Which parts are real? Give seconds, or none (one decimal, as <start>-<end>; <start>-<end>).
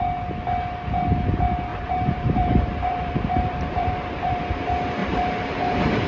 0.0-1.7; 4.4-5.0; 5.6-6.1